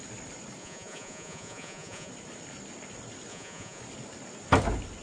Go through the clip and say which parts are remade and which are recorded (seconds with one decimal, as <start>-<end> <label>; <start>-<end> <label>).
0.0-0.6 recorded; 0.6-2.1 remade; 2.1-3.3 recorded; 3.3-3.8 remade; 3.8-5.0 recorded